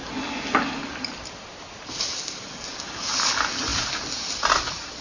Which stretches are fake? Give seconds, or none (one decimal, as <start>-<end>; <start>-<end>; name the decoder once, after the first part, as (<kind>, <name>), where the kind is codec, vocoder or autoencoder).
none